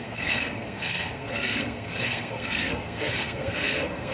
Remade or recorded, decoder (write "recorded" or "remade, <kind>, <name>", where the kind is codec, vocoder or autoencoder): remade, codec, SNAC